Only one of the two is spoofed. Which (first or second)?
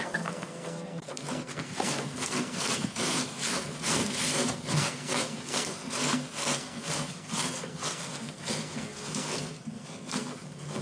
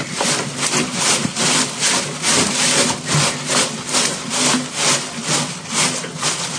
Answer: first